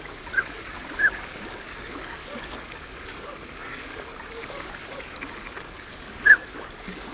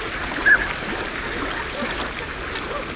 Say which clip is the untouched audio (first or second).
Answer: second